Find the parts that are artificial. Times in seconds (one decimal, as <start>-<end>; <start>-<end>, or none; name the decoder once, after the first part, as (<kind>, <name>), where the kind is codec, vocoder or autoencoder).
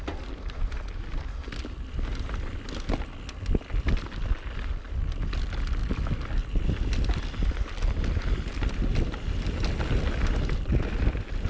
none